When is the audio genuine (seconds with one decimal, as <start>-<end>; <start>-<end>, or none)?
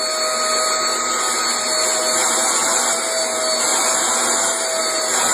0.0-0.9; 1.4-5.3